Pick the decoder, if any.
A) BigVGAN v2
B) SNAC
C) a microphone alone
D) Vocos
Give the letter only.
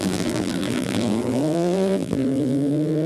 A